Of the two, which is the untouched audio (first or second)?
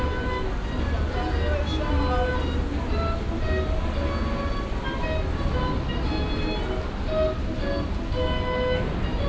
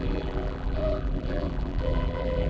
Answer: first